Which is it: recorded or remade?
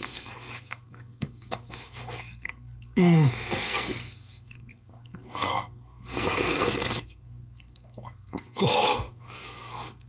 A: remade